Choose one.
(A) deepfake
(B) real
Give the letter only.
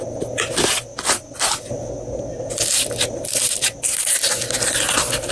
B